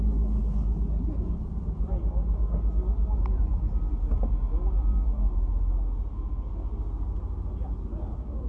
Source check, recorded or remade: recorded